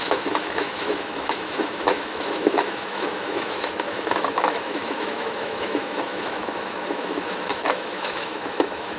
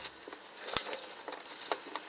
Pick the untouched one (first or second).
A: second